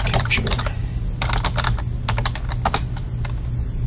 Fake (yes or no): no